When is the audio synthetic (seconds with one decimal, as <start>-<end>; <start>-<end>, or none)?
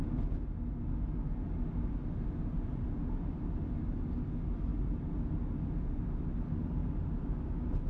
none